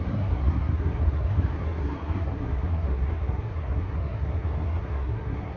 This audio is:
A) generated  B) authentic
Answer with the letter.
A